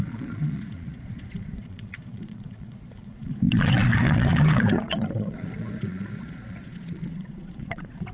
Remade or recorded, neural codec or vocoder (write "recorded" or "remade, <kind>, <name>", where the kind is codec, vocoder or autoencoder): remade, vocoder, Vocos